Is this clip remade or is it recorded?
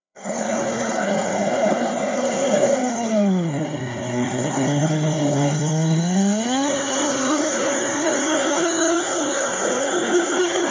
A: remade